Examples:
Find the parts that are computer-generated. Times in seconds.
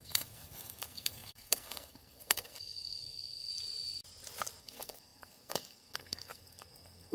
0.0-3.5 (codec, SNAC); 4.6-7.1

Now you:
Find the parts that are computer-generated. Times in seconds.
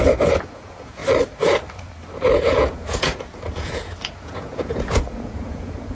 0.0-1.0 (vocoder, Vocos); 2.5-5.9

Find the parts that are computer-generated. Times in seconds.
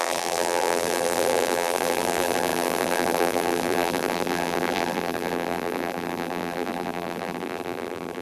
0.0-8.2 (vocoder, BigVGAN v2)